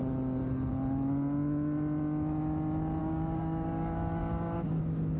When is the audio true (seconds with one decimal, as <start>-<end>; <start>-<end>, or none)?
0.0-3.0; 4.8-5.2